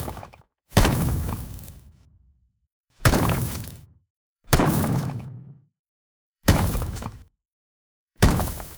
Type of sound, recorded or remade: remade